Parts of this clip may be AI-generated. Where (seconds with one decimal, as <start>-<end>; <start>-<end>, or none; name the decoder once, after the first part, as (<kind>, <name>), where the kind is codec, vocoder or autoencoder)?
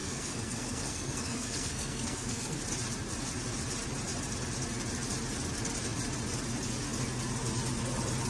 0.0-2.6 (codec, SNAC)